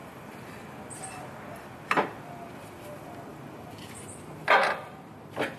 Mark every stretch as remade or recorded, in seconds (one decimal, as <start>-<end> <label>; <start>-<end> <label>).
0.0-2.7 remade; 2.7-3.3 recorded; 3.3-5.6 remade